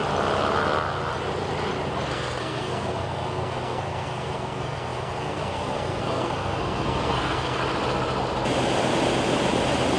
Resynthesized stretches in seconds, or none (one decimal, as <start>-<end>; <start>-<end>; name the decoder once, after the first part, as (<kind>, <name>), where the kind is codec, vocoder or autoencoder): 2.1-7.6 (codec, SNAC)